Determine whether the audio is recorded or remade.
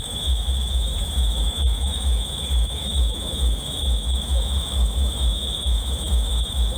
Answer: remade